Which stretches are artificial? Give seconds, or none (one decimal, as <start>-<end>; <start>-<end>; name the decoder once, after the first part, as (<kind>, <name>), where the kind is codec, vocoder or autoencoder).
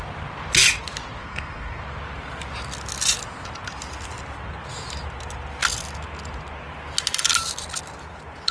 1.2-1.8 (codec, SNAC)